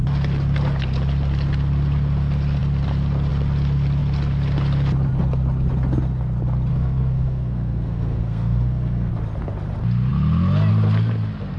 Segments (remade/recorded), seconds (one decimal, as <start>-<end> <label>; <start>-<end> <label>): 0.0-6.7 recorded; 6.7-9.1 remade; 9.1-11.6 recorded